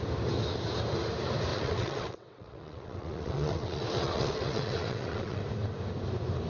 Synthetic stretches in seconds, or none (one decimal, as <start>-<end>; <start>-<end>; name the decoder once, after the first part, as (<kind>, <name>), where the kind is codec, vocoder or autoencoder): 1.5-5.4 (vocoder, WaveNeXt)